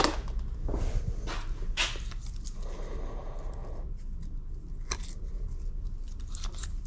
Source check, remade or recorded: recorded